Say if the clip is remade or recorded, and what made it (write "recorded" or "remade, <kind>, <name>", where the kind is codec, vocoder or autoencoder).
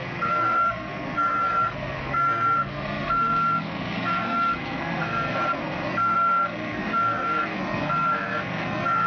remade, codec, SNAC